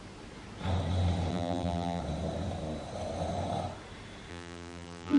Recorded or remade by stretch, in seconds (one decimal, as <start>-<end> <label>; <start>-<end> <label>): 0.0-1.3 recorded; 1.3-2.0 remade; 2.0-4.3 recorded; 4.3-5.2 remade